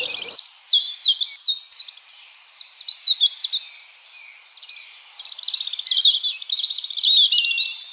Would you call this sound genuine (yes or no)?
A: yes